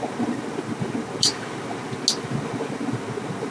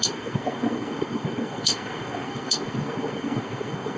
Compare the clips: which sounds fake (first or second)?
second